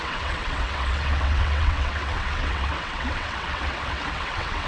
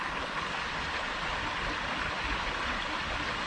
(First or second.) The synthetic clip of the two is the first